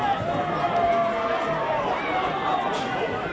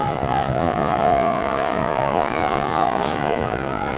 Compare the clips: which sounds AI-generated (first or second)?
second